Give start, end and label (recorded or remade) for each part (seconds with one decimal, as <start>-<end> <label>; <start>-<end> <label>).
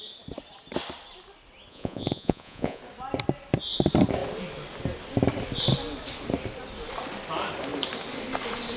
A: 0.0-1.7 recorded; 1.7-2.8 remade; 2.8-8.8 recorded